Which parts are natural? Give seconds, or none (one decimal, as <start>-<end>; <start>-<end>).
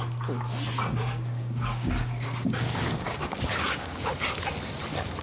0.0-1.0; 4.1-5.2